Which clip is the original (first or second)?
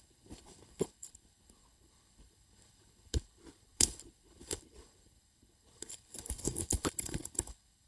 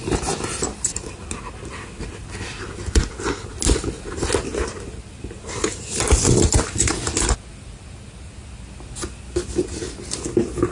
second